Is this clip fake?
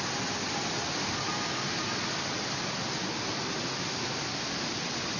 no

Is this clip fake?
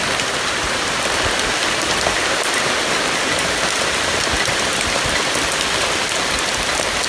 no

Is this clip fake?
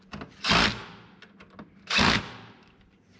no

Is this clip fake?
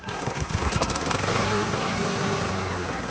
yes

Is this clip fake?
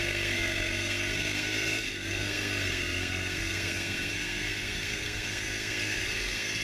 yes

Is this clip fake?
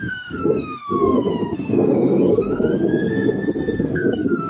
yes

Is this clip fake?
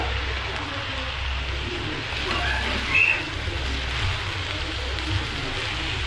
no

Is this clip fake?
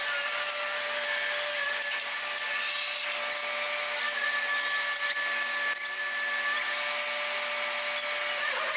no